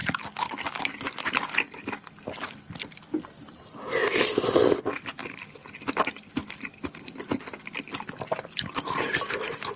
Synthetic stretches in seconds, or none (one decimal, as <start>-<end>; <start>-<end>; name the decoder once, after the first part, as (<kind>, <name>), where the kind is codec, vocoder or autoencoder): none